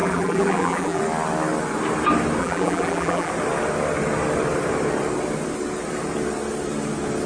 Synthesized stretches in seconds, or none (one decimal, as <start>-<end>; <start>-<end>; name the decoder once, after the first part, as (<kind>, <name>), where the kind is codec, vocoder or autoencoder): 0.0-1.0 (vocoder, BigVGAN v2); 2.4-3.3